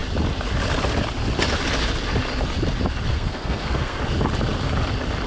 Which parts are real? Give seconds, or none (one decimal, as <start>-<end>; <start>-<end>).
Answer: 0.0-3.1; 4.0-5.3